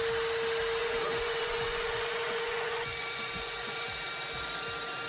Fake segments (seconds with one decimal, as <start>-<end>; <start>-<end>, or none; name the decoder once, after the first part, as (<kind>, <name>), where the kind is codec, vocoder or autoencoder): 0.8-3.9 (vocoder, Vocos)